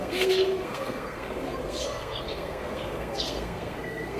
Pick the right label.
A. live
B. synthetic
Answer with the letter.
B